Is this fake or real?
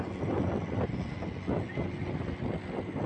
real